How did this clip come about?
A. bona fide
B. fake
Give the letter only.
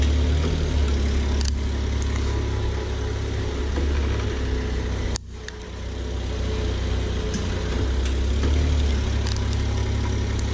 A